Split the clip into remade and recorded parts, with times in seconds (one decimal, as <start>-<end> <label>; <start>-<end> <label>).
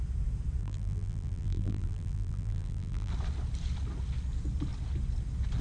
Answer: 0.0-0.6 recorded; 0.6-3.1 remade; 3.1-5.6 recorded